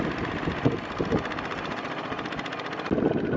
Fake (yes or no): no